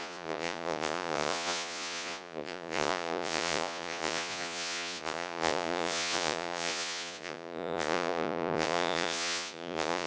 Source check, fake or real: fake